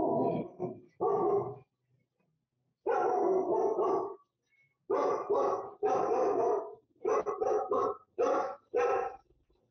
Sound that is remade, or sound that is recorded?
recorded